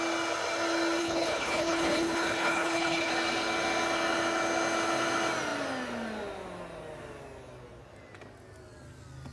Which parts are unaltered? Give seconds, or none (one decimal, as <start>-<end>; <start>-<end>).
0.0-1.0; 3.1-9.3